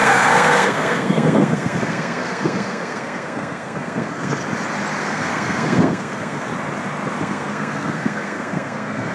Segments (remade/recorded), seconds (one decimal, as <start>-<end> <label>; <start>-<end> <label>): 0.0-4.4 remade; 4.4-5.0 recorded; 5.0-6.5 remade; 6.5-7.2 recorded; 7.2-9.1 remade